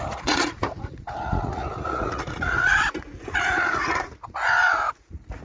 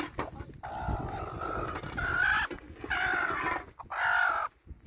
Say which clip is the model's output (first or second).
first